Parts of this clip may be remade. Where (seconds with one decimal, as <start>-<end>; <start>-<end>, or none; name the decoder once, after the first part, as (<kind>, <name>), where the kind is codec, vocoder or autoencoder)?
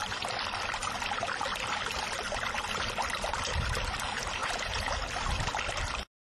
4.4-4.9 (vocoder, Vocos)